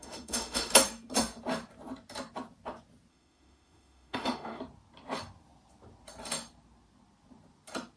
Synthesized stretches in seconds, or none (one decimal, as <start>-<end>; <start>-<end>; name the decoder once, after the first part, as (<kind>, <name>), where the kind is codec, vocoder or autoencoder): 0.0-0.7 (autoencoder, DAC-VAE); 3.1-4.6